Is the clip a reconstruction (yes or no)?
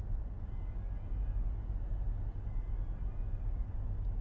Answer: no